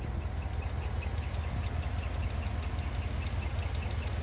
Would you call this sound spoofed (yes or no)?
no